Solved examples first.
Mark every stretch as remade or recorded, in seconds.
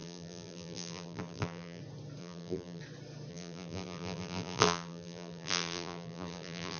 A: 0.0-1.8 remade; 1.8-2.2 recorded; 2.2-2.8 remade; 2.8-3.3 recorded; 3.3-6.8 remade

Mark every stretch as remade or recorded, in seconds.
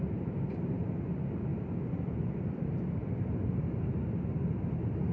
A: 0.0-1.5 recorded; 1.5-3.6 remade; 3.6-5.1 recorded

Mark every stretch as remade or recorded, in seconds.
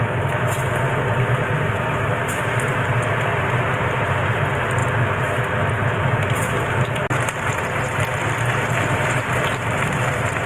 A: 0.0-4.8 remade; 4.8-5.7 recorded; 5.7-10.5 remade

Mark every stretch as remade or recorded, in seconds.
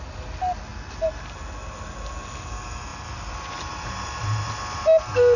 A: 0.0-2.9 recorded; 2.9-3.5 remade; 3.5-5.4 recorded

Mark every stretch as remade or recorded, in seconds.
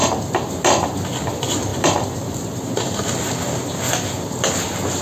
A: 0.0-0.5 remade; 0.5-1.7 recorded; 1.7-2.8 remade; 2.8-5.0 recorded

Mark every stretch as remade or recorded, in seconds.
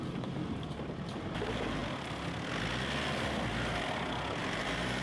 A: 0.0-1.8 remade; 1.8-4.4 recorded; 4.4-5.0 remade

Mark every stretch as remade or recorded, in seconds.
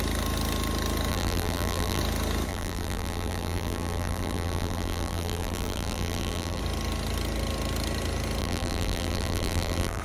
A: 0.0-1.1 recorded; 1.1-2.0 remade; 2.0-2.5 recorded; 2.5-6.6 remade; 6.6-8.4 recorded; 8.4-10.0 remade